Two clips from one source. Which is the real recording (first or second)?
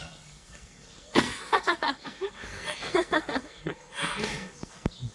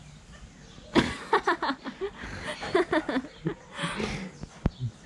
second